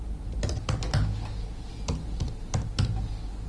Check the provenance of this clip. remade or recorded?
recorded